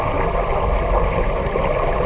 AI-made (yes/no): no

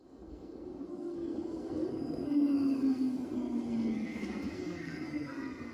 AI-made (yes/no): yes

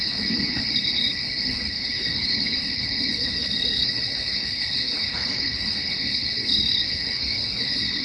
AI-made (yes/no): yes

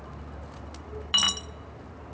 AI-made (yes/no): no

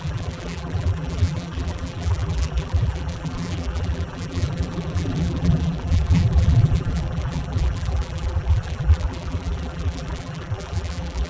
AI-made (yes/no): yes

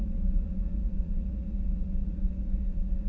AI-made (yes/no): yes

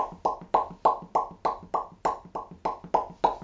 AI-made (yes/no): no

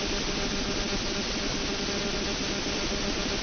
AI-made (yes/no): no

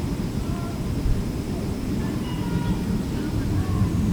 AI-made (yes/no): no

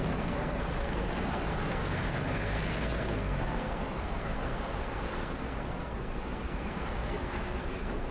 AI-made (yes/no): yes